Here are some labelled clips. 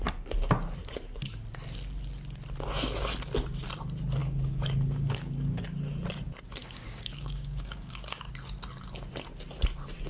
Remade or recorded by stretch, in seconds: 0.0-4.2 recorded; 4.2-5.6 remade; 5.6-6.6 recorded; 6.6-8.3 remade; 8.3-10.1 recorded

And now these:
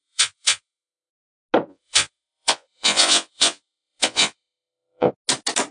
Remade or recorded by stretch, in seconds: 0.0-1.1 remade; 1.1-1.7 recorded; 1.7-5.1 remade; 5.1-5.7 recorded

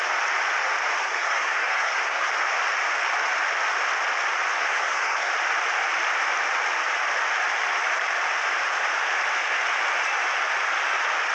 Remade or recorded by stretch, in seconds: 0.0-1.0 recorded; 1.0-2.3 remade; 2.3-4.6 recorded; 4.6-5.3 remade; 5.3-11.3 recorded

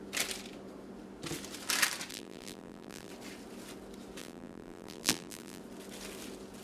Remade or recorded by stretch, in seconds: 0.0-2.1 recorded; 2.1-3.1 remade; 3.1-4.2 recorded; 4.2-5.6 remade; 5.6-6.6 recorded

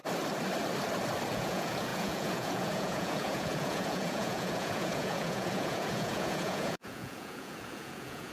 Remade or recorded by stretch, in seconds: 0.0-1.3 recorded; 1.3-8.3 remade

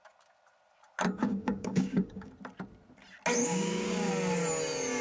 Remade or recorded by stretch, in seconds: 0.0-1.2 recorded; 1.2-2.3 remade; 2.3-3.4 recorded; 3.4-4.1 remade; 4.1-5.0 recorded